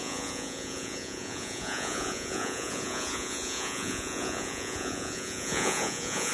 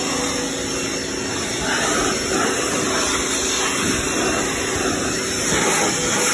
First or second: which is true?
second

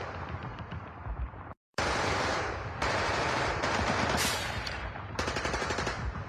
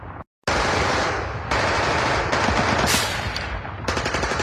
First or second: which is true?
second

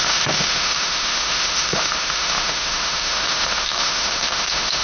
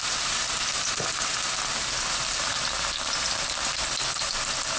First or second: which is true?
second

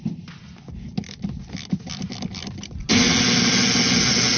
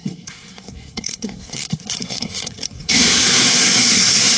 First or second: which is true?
first